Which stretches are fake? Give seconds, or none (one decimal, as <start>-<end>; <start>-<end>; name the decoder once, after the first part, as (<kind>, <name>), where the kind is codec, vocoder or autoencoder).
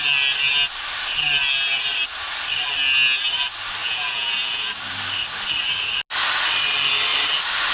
3.8-4.7 (vocoder, Vocos)